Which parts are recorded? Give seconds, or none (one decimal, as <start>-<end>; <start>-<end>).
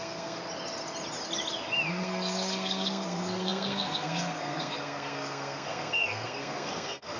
0.4-1.9